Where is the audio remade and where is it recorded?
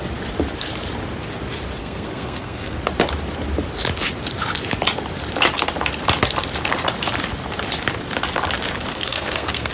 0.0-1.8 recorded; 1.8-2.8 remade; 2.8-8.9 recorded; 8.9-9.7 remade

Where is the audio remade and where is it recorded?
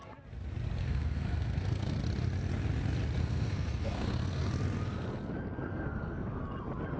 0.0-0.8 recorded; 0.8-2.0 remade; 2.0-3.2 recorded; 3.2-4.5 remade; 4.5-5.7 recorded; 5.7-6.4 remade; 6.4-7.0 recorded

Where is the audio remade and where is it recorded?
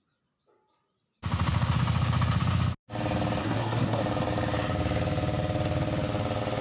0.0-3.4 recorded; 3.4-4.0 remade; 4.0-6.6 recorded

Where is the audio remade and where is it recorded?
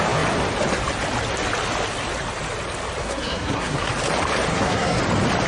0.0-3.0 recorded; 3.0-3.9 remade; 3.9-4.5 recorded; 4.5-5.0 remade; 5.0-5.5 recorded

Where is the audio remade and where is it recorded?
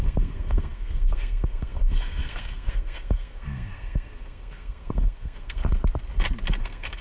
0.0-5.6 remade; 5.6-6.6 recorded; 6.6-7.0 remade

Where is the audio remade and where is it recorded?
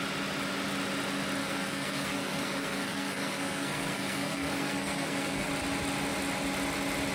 0.0-1.4 recorded; 1.4-5.5 remade; 5.5-7.1 recorded